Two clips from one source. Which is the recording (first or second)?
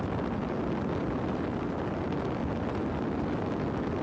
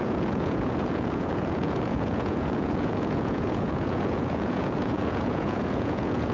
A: first